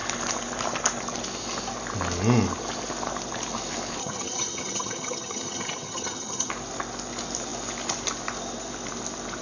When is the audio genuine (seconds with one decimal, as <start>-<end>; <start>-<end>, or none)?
0.0-4.0; 6.5-9.4